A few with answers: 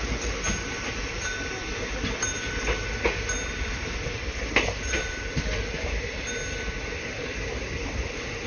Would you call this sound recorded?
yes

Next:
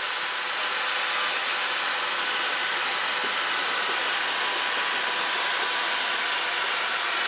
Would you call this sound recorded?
yes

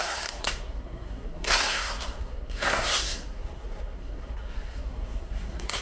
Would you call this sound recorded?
no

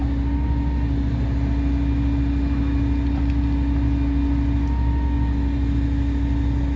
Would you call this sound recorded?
yes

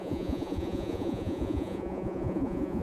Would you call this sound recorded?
no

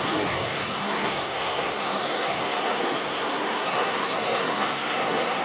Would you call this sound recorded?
no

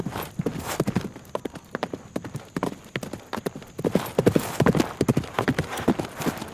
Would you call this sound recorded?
yes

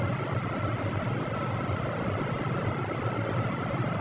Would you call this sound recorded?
yes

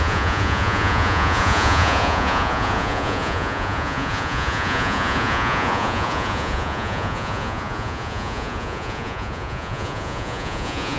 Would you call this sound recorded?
no